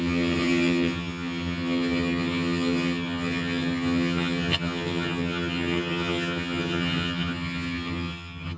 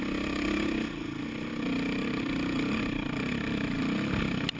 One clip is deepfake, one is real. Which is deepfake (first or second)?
first